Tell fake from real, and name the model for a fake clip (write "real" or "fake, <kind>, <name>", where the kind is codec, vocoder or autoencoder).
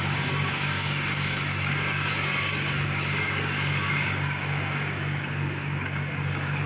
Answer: fake, codec, DAC